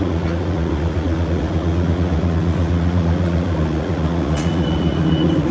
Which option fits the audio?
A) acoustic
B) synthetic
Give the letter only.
B